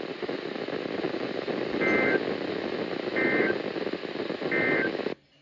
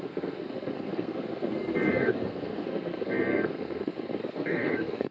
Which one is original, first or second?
first